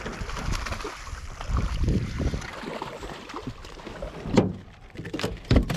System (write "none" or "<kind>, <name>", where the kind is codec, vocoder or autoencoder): none